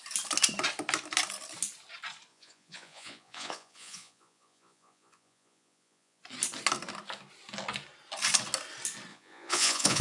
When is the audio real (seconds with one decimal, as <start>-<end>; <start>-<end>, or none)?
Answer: 0.0-2.3; 6.2-9.1